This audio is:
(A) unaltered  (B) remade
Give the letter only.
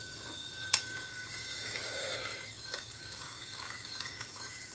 B